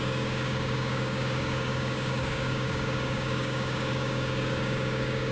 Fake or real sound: fake